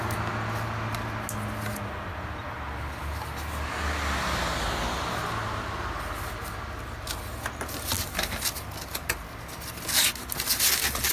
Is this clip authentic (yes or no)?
yes